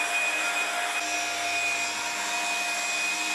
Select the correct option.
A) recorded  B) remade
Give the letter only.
A